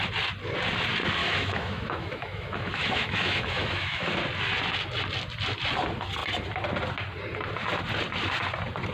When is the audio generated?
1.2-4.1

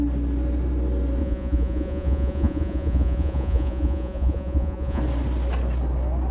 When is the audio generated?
1.2-5.0